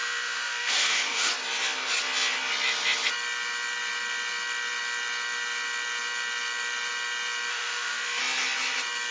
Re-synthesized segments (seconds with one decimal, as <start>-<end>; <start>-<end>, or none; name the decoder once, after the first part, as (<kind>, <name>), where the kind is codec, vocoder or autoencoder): 0.0-1.3 (autoencoder, DAC-VAE); 7.5-8.2